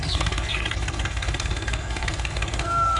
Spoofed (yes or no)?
yes